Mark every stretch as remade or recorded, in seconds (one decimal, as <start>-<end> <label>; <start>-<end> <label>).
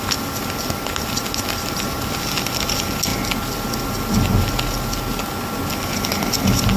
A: 0.0-6.8 recorded